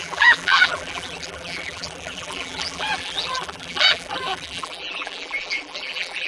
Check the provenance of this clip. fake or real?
fake